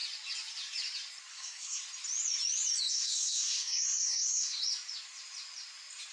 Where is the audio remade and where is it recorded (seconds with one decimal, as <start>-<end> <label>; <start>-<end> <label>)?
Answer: 0.0-1.3 recorded; 1.3-1.8 remade; 1.8-2.9 recorded; 2.9-4.6 remade; 4.6-6.1 recorded